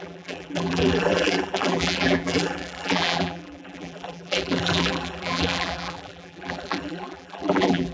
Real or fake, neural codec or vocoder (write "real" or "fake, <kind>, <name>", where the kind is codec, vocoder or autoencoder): fake, vocoder, BigVGAN v2